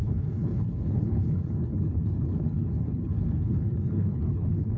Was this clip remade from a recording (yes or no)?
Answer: yes